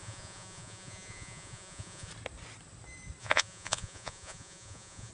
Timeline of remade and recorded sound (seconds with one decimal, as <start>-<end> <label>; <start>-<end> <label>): 0.0-2.1 remade; 2.1-3.2 recorded; 3.2-5.1 remade